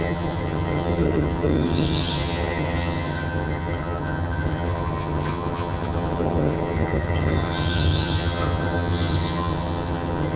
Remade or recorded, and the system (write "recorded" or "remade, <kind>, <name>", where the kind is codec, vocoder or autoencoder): remade, vocoder, HiFi-GAN